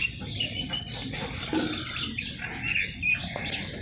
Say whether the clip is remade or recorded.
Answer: recorded